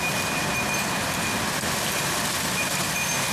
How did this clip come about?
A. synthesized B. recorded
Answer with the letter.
B